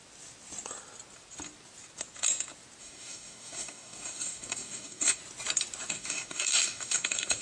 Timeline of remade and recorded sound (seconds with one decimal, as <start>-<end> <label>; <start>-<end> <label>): 0.0-2.8 recorded; 2.8-5.2 remade; 5.2-5.9 recorded; 5.9-7.4 remade